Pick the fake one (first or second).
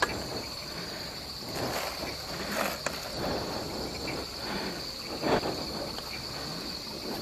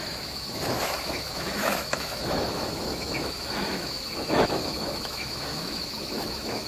second